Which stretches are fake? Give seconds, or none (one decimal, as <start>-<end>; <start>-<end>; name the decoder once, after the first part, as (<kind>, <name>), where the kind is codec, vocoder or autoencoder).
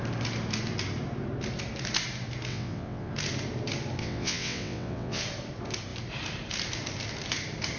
2.5-3.1 (vocoder, WaveNeXt); 4.0-5.2